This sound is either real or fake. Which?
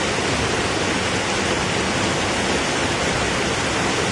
real